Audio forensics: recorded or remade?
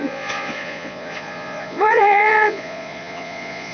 remade